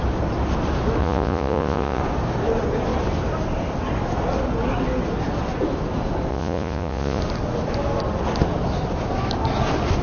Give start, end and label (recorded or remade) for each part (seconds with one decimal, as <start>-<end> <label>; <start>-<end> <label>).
0.0-1.0 recorded; 1.0-2.0 remade; 2.0-6.3 recorded; 6.3-7.2 remade; 7.2-10.0 recorded